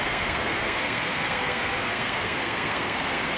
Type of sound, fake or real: fake